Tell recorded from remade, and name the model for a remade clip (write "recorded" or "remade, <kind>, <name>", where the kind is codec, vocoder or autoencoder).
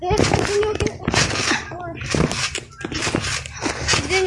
recorded